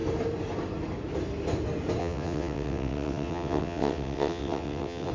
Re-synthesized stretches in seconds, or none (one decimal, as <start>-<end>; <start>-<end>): 2.0-5.1